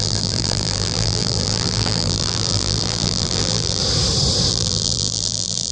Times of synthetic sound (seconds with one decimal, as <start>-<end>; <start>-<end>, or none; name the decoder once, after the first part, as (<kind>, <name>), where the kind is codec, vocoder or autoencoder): 0.0-3.8 (vocoder, BigVGAN v2); 4.5-5.7